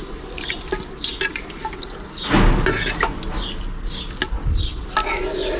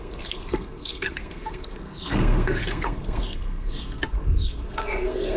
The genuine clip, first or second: first